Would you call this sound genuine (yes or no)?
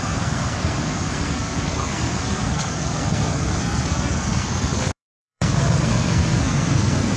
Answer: no